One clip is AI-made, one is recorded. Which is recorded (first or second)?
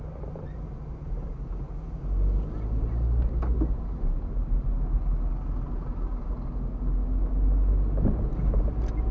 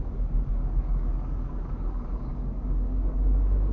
first